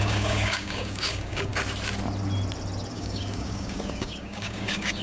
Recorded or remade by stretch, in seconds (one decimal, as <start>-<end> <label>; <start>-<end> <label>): 0.0-1.5 remade; 1.5-2.9 recorded; 2.9-5.0 remade